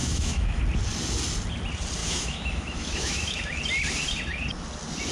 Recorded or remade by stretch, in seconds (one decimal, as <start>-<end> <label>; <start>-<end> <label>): 0.0-0.6 remade; 0.6-2.0 recorded; 2.0-3.6 remade; 3.6-5.1 recorded